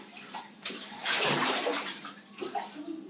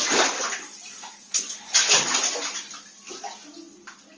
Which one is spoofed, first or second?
first